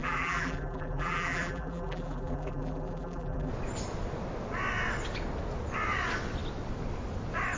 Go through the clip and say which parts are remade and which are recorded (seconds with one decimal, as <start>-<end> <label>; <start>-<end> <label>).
0.0-3.5 remade; 3.5-7.6 recorded